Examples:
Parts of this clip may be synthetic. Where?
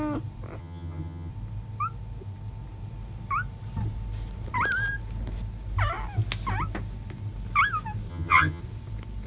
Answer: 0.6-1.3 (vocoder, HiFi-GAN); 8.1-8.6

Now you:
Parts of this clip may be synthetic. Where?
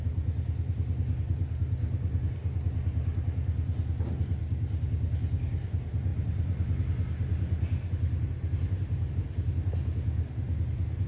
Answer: none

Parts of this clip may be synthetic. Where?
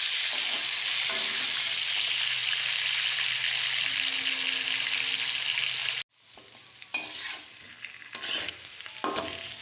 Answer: 2.4-3.3 (vocoder, BigVGAN v2)